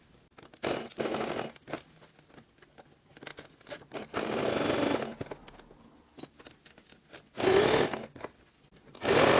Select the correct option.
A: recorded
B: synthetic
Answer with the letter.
A